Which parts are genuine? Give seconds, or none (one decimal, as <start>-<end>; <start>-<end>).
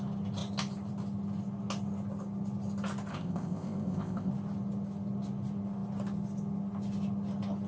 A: 0.0-3.1; 4.3-7.7